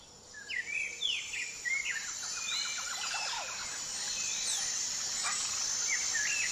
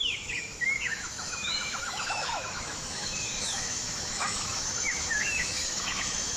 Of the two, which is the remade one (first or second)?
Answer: second